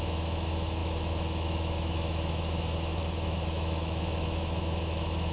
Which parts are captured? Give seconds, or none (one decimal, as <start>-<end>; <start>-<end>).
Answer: none